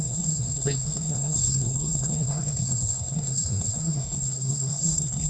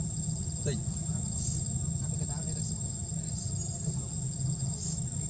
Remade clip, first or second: first